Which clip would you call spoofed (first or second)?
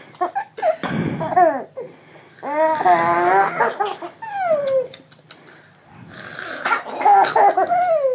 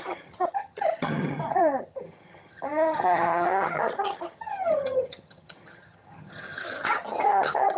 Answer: second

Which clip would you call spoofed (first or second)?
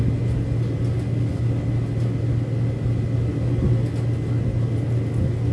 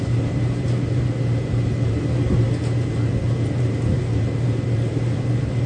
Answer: second